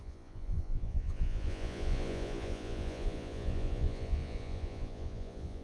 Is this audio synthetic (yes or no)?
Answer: yes